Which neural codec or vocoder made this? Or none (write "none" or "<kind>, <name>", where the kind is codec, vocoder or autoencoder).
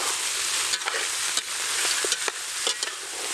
none